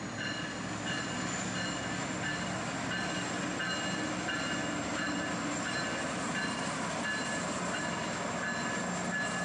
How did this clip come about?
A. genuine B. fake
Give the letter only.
A